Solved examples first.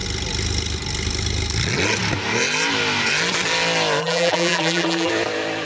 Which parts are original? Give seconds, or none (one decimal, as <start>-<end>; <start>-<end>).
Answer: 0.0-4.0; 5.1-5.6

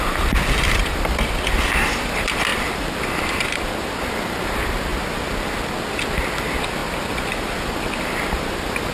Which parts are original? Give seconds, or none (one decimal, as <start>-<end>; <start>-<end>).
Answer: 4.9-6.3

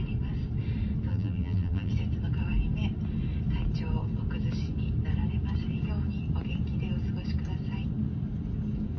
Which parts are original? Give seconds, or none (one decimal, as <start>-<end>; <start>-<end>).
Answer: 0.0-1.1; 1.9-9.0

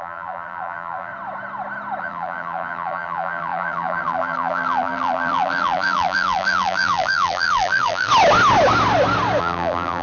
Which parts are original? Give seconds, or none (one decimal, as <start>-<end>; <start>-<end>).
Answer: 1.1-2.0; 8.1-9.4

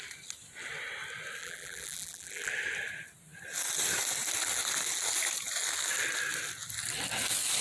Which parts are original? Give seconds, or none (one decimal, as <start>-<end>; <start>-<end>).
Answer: 0.0-1.4; 2.5-7.6

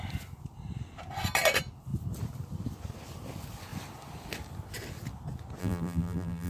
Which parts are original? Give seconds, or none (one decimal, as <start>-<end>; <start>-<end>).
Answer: 0.0-5.6

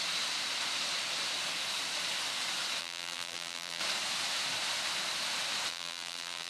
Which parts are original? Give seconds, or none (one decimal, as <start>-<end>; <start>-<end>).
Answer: 0.0-2.8; 3.8-5.7

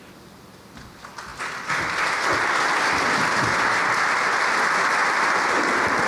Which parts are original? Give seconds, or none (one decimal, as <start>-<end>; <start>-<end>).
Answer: 0.0-6.1